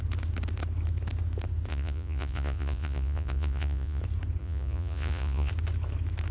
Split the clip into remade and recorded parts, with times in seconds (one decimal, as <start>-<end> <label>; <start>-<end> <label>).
0.0-1.7 recorded; 1.7-4.0 remade; 4.0-4.4 recorded; 4.4-5.5 remade; 5.5-6.3 recorded

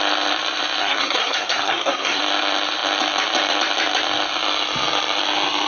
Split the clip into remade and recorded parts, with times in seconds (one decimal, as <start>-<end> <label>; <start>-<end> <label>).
0.0-0.8 recorded; 0.8-2.2 remade; 2.2-5.7 recorded

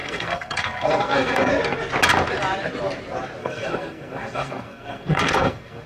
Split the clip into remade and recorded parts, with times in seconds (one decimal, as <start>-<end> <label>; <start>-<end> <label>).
0.0-1.5 remade; 1.5-3.4 recorded; 3.4-5.9 remade

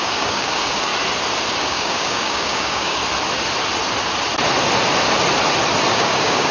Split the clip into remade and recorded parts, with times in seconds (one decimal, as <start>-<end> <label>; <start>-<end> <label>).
0.0-0.9 remade; 0.9-1.6 recorded; 1.6-3.0 remade; 3.0-5.9 recorded; 5.9-6.5 remade

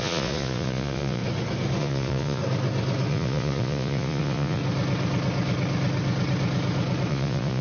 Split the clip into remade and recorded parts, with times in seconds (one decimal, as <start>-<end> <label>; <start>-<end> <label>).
0.0-1.2 remade; 1.2-1.8 recorded; 1.8-2.4 remade; 2.4-3.1 recorded; 3.1-4.6 remade; 4.6-7.1 recorded; 7.1-7.6 remade

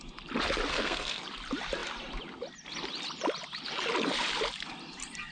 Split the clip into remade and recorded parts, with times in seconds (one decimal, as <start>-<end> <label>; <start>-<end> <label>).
0.0-0.7 recorded; 0.7-1.2 remade; 1.2-5.3 recorded

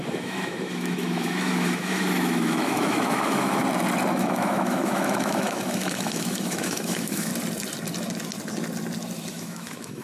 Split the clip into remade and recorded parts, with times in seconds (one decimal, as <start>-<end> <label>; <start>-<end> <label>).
0.0-3.6 remade; 3.6-4.1 recorded; 4.1-7.3 remade; 7.3-9.3 recorded; 9.3-10.0 remade